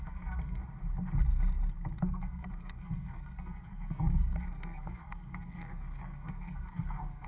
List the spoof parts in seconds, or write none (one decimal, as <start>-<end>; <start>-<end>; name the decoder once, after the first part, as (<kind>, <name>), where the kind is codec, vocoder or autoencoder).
0.0-0.6 (codec, SNAC); 2.0-7.3